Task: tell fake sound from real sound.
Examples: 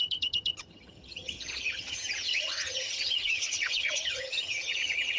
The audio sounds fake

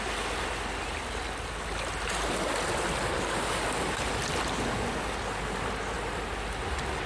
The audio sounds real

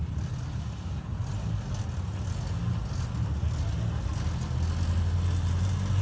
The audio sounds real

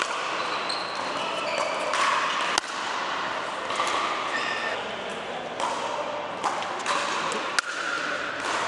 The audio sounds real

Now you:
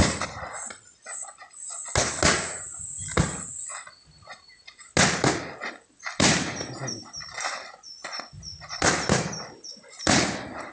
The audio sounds real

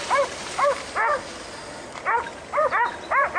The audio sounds real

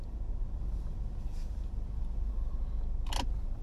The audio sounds real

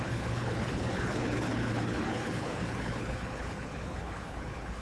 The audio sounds fake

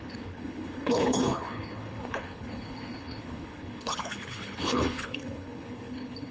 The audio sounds fake